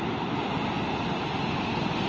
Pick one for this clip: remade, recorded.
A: recorded